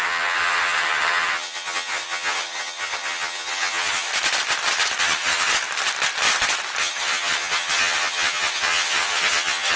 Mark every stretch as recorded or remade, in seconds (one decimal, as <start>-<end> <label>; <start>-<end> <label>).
0.0-4.1 remade; 4.1-5.0 recorded; 5.0-5.5 remade; 5.5-6.8 recorded; 6.8-9.8 remade